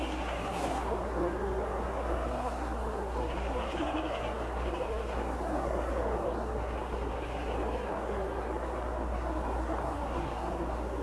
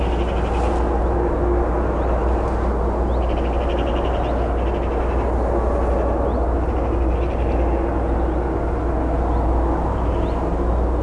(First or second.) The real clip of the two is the second